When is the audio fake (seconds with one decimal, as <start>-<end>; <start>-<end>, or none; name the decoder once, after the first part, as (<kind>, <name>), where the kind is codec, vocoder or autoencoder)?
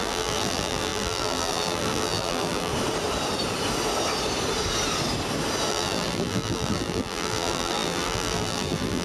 0.0-2.7 (vocoder, BigVGAN v2); 5.7-9.0